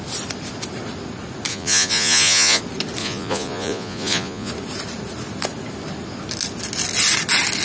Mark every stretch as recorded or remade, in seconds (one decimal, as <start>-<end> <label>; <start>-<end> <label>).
0.0-1.5 recorded; 1.5-2.6 remade; 2.6-3.0 recorded; 3.0-4.5 remade; 4.5-7.6 recorded